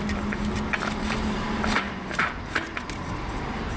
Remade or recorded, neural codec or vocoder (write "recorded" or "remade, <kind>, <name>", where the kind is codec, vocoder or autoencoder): recorded